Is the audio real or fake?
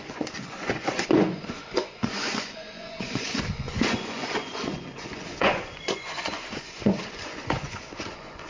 fake